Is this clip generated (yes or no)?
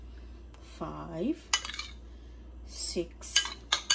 no